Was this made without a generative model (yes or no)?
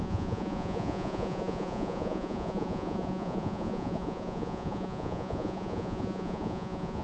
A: no